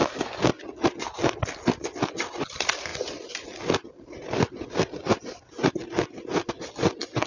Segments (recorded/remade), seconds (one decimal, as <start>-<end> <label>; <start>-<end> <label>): 0.0-1.4 remade; 1.4-7.3 recorded